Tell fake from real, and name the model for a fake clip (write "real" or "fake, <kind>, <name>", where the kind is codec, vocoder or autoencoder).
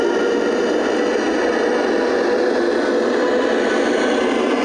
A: real